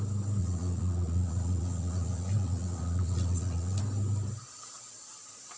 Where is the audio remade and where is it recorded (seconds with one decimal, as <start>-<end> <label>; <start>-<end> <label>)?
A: 0.0-0.4 recorded; 0.4-3.8 remade; 3.8-5.6 recorded